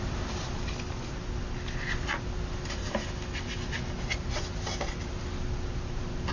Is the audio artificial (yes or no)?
no